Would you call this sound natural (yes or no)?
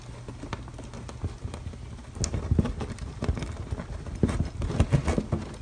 yes